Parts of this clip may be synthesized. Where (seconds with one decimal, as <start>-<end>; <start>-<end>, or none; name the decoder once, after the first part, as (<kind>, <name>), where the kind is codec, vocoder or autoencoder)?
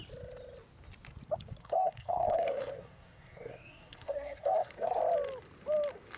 1.6-5.0 (codec, SNAC)